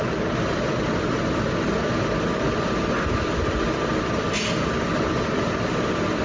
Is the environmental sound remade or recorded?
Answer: recorded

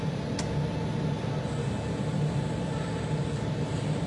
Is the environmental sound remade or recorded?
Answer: recorded